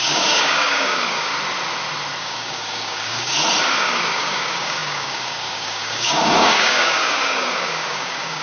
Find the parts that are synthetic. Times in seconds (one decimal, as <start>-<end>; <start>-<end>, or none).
0.0-1.3; 2.2-3.3; 3.8-8.4